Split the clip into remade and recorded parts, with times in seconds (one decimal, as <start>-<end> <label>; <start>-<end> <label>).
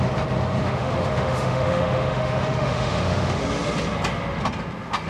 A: 0.0-0.6 recorded; 0.6-3.4 remade; 3.4-5.1 recorded